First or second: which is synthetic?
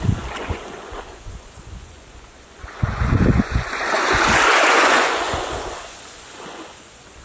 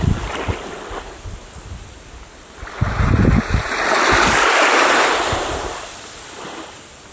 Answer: first